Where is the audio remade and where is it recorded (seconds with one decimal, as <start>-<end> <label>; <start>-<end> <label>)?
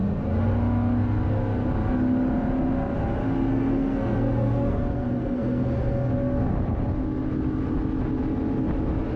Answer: 0.0-3.5 recorded; 3.5-6.1 remade; 6.1-9.2 recorded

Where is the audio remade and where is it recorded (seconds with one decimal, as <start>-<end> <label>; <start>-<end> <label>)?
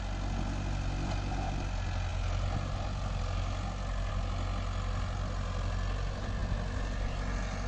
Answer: 0.0-7.7 recorded